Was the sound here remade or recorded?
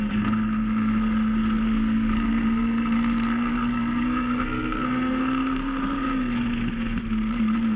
remade